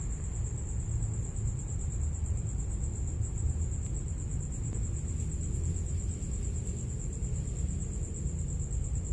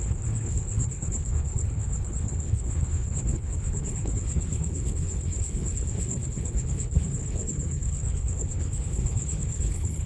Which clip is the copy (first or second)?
second